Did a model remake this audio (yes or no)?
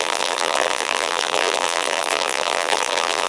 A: yes